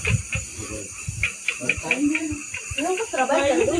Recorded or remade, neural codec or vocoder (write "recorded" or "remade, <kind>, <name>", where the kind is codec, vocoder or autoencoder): recorded